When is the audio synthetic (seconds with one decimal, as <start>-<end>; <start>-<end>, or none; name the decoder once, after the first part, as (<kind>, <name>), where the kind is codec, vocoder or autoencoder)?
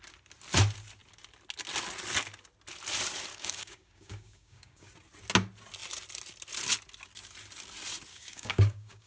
3.3-4.9 (codec, DAC); 8.1-9.1